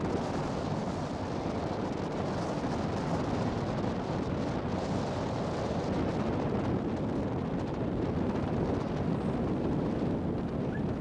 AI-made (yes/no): no